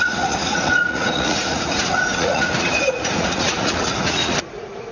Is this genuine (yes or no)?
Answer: no